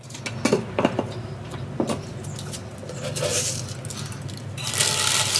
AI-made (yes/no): no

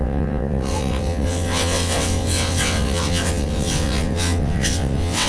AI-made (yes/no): yes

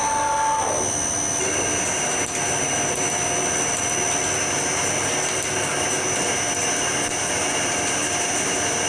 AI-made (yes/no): no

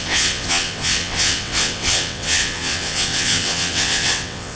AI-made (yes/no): yes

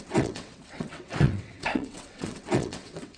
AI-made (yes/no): yes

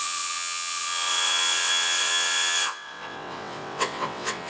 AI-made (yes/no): yes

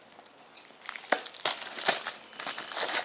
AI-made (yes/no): no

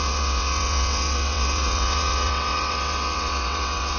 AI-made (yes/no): yes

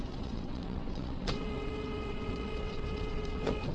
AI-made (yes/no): yes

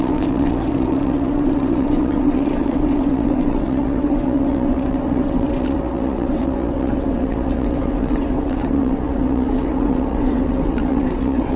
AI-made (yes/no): yes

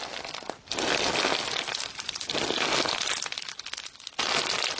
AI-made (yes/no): no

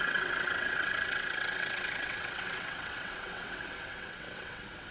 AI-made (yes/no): yes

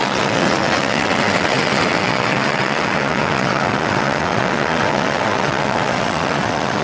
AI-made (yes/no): yes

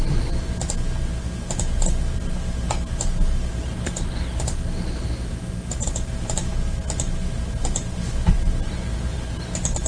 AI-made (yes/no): no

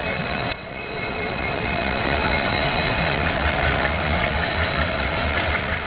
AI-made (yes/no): yes